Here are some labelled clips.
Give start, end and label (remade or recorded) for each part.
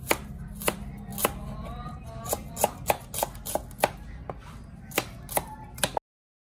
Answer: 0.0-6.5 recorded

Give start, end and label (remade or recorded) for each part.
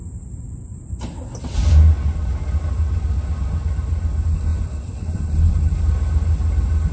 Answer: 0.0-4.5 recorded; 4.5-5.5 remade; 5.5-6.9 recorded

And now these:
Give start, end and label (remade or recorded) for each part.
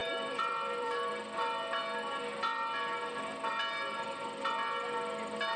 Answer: 0.0-1.1 remade; 1.1-5.6 recorded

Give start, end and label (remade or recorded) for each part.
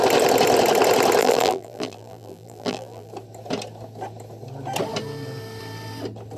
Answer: 0.0-1.2 recorded; 1.2-3.1 remade; 3.1-6.4 recorded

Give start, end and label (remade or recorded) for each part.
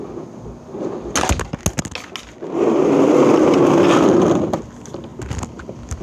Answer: 0.0-6.0 recorded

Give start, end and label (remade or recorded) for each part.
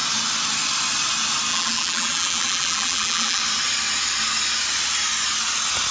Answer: 0.0-1.5 recorded; 1.5-3.4 remade; 3.4-5.9 recorded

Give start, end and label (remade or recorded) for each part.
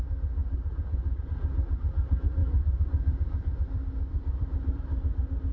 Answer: 0.0-2.4 recorded; 2.4-4.8 remade; 4.8-5.5 recorded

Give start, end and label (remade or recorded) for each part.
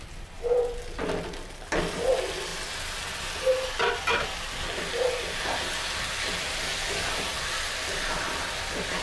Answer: 0.0-2.5 remade; 2.5-6.2 recorded; 6.2-9.0 remade